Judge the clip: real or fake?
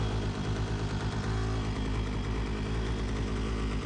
real